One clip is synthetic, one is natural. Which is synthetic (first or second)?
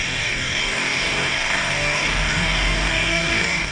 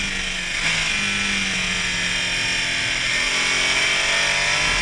first